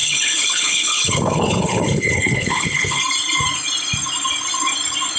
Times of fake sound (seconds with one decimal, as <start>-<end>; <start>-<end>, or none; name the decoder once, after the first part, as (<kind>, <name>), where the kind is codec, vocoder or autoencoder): 0.0-3.0 (codec, HILCodec)